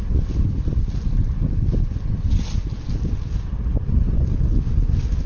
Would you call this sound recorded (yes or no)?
yes